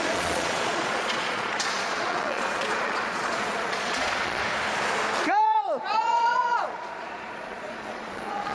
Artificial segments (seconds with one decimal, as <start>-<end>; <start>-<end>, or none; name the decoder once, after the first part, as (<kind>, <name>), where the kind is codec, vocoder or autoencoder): 0.0-4.4 (vocoder, Vocos); 5.2-8.5